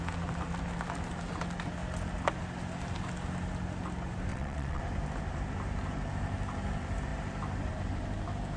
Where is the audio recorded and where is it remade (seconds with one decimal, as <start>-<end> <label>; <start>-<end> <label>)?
0.0-4.3 recorded; 4.3-4.8 remade; 4.8-8.6 recorded